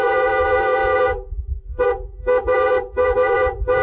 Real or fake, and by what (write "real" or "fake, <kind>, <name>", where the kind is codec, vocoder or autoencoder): fake, vocoder, Vocos